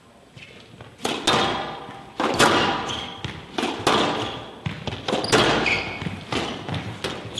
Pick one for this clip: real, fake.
real